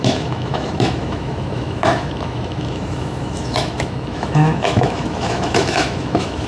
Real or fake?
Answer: fake